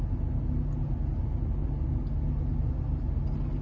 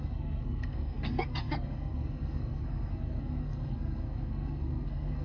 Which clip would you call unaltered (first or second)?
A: first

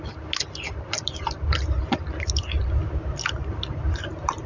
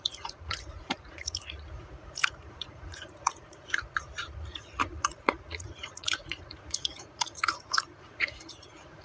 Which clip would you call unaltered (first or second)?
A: first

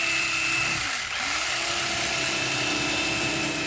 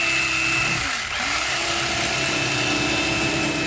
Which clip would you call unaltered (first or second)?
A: second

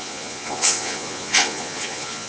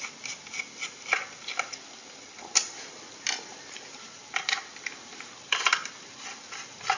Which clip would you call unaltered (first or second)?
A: second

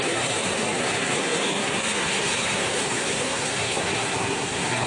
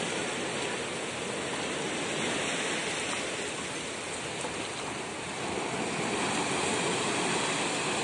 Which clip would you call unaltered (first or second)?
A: second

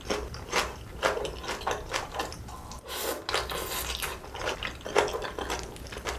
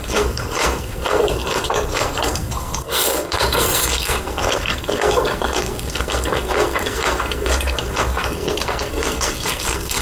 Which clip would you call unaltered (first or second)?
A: first